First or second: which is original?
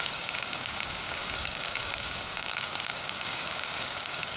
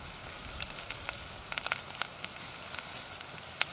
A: second